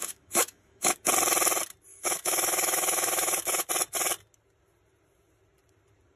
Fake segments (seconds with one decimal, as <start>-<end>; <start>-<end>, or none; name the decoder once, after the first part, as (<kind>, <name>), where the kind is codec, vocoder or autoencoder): 0.0-1.1 (autoencoder, DAC-VAE); 1.9-3.7